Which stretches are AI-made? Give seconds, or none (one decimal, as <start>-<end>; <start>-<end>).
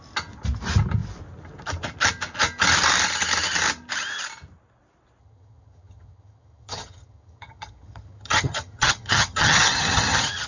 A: 5.2-10.5